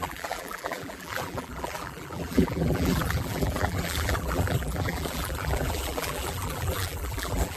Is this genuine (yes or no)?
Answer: no